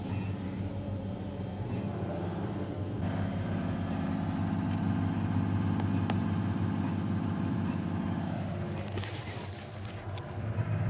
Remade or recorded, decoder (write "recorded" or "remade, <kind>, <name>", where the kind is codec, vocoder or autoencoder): recorded